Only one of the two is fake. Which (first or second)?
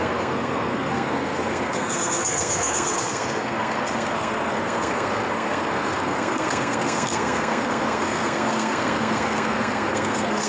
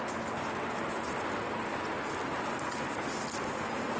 first